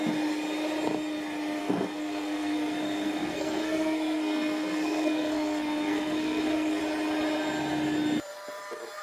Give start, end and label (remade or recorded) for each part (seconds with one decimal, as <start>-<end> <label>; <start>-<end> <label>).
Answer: 0.0-1.6 recorded; 1.6-6.8 remade; 6.8-9.0 recorded

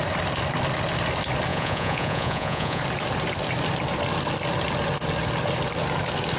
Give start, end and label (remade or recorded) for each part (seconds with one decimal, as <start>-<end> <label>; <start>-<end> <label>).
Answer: 0.0-1.5 recorded; 1.5-2.8 remade; 2.8-6.4 recorded